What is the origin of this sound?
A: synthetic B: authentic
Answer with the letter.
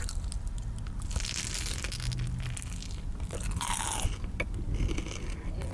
B